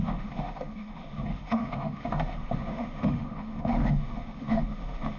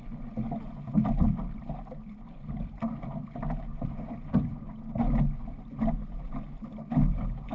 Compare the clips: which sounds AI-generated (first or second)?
first